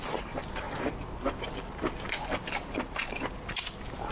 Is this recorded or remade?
recorded